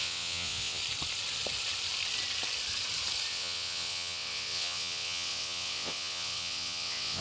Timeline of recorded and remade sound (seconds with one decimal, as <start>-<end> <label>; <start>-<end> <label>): 0.0-0.8 remade; 0.8-3.3 recorded; 3.3-7.2 remade